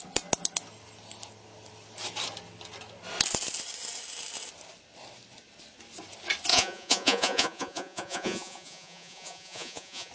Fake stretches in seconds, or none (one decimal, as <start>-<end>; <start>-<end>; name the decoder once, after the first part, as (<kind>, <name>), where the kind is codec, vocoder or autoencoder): 6.5-10.1 (vocoder, Vocos)